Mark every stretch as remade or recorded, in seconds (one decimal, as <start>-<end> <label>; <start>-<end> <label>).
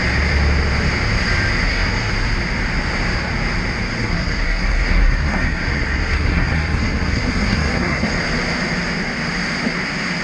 0.0-1.6 recorded; 1.6-2.1 remade; 2.1-4.0 recorded; 4.0-8.1 remade; 8.1-10.2 recorded